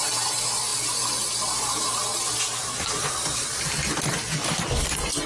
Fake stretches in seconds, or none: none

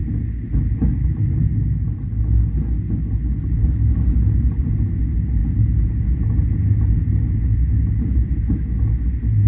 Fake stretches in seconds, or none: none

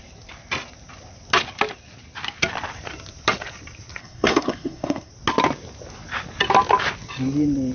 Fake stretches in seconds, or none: 4.0-5.1 (codec, SNAC)

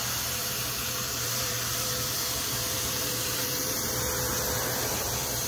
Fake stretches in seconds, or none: 0.4-3.7 (vocoder, BigVGAN v2)